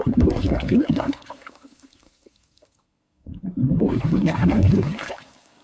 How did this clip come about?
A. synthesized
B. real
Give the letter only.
A